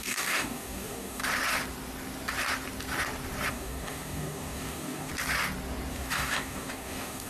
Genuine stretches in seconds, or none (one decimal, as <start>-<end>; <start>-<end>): 1.2-3.5; 5.1-5.9